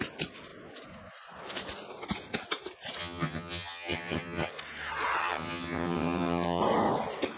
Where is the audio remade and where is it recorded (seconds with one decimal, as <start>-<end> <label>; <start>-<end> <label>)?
0.0-3.0 recorded; 3.0-4.5 remade; 4.5-5.2 recorded; 5.2-6.6 remade; 6.6-7.4 recorded